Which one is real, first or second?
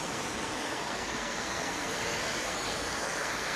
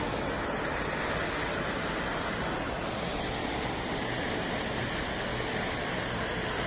second